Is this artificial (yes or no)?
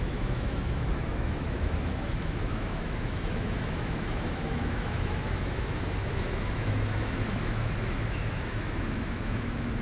yes